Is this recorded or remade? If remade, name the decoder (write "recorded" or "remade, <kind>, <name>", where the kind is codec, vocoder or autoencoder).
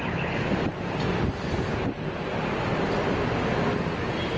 recorded